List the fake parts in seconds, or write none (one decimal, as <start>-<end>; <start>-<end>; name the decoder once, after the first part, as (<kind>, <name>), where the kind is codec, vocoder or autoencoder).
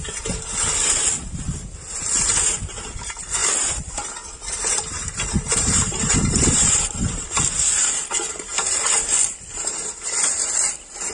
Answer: 3.4-7.4 (vocoder, BigVGAN v2); 8.5-10.1